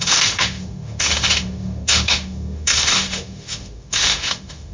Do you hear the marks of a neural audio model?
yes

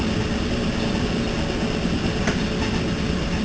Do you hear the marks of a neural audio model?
no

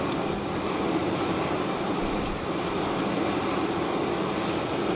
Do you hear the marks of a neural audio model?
no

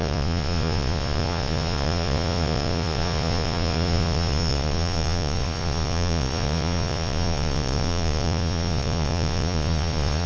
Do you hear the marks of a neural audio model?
yes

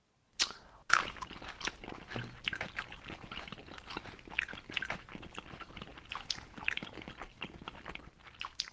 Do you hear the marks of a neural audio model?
no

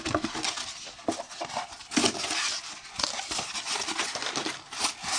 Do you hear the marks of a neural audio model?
no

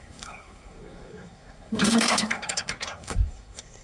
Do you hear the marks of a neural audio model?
yes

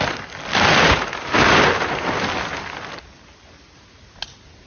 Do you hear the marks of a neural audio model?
no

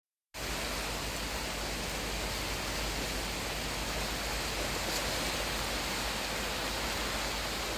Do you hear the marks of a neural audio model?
no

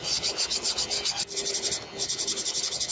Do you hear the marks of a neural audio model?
no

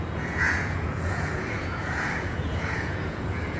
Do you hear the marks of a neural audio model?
yes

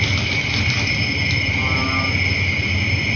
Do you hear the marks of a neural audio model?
no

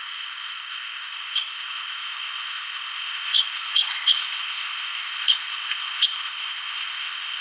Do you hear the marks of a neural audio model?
yes